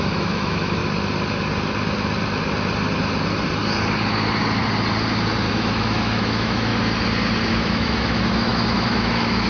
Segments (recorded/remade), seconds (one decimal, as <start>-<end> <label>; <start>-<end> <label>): 0.0-0.8 remade; 0.8-5.5 recorded; 5.5-6.7 remade; 6.7-7.5 recorded; 7.5-9.5 remade